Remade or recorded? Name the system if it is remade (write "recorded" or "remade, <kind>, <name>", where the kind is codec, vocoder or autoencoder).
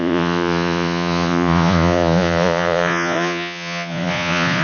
remade, vocoder, Vocos